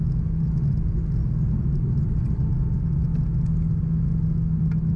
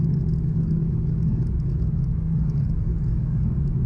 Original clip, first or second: first